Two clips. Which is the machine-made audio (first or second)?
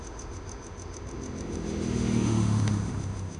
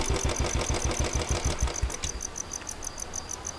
first